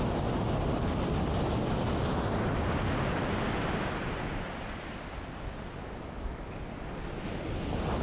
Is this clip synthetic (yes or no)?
no